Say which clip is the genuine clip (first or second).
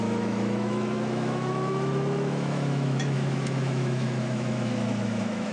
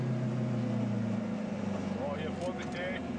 second